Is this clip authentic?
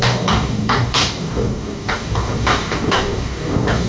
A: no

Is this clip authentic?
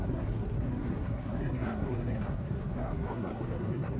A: no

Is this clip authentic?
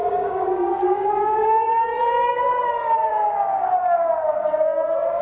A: no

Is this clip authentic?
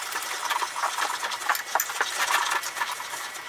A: yes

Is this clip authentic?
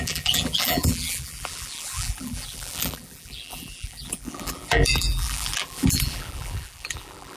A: no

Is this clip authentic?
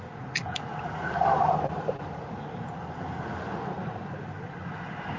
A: yes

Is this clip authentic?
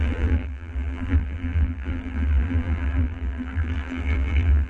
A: no